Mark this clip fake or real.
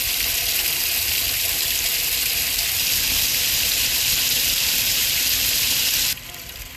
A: real